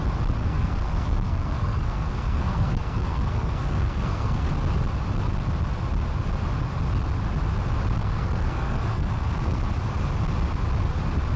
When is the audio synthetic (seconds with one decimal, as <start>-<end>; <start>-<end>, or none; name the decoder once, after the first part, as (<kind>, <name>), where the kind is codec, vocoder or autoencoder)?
0.4-4.5 (codec, SNAC); 8.0-9.6